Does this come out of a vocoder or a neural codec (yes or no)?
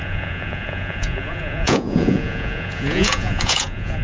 yes